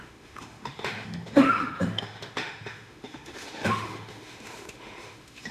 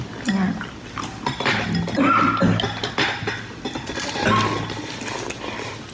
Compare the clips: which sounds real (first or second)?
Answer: second